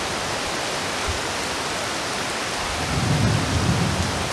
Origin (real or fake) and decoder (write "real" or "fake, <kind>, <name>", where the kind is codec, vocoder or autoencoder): real